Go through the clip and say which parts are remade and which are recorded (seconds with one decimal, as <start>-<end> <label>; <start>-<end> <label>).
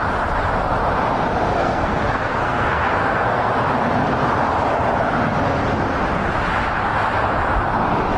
0.0-1.4 recorded; 1.4-3.5 remade; 3.5-8.2 recorded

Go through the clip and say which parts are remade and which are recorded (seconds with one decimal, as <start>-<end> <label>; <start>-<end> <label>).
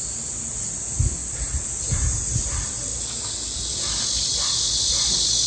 0.0-5.5 recorded